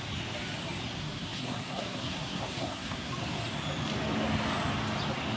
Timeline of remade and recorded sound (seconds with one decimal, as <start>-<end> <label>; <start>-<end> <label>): 0.0-1.0 recorded; 1.0-3.1 remade; 3.1-5.4 recorded

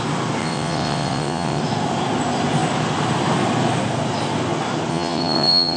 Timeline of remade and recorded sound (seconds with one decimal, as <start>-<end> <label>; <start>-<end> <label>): 0.0-0.4 recorded; 0.4-1.6 remade; 1.6-4.9 recorded; 4.9-5.8 remade

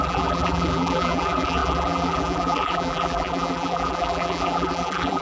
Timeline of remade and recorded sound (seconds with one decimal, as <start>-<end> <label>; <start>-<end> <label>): 0.0-5.2 remade

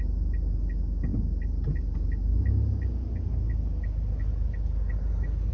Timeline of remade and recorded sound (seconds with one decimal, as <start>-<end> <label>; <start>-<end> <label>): 0.0-5.5 recorded

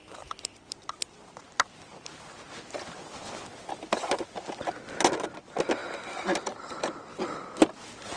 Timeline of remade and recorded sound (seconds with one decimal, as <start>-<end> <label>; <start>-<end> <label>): 0.0-8.2 recorded

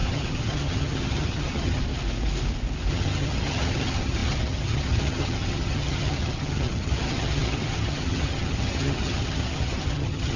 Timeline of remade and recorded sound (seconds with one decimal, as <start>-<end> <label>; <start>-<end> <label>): 0.0-1.8 remade; 1.8-2.9 recorded; 2.9-10.4 remade

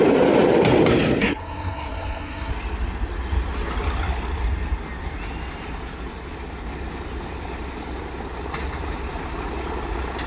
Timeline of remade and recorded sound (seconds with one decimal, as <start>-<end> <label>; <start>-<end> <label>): 0.0-1.2 recorded; 1.2-2.5 remade; 2.5-10.3 recorded

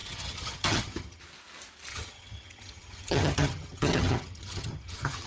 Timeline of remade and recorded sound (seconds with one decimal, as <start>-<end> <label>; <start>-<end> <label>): 0.0-1.2 remade; 1.2-1.9 recorded; 1.9-5.3 remade